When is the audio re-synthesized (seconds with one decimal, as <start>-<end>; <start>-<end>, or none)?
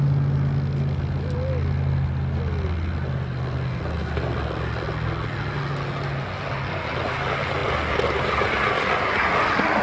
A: none